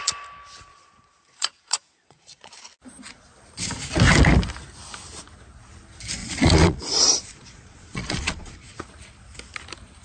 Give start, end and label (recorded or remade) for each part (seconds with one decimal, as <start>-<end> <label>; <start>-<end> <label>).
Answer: 0.0-0.7 recorded; 0.7-2.6 remade; 2.6-6.2 recorded; 6.2-8.8 remade; 8.8-10.0 recorded